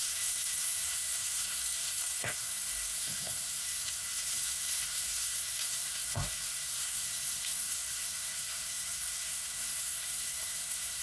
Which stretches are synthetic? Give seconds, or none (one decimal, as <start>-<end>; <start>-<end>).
0.0-11.0

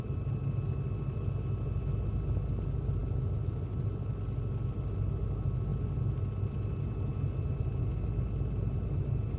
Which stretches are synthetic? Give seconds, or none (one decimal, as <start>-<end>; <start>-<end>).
none

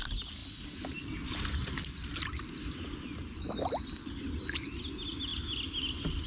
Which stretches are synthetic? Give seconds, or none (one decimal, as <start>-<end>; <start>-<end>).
none

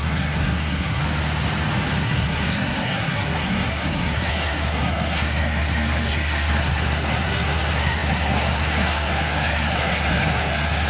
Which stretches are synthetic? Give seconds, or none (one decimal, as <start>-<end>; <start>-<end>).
0.0-1.0; 1.9-10.9